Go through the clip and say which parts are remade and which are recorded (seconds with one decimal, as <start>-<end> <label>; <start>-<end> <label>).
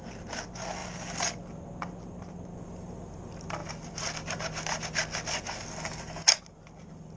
0.0-7.2 recorded